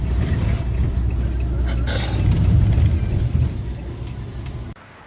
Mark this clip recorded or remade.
recorded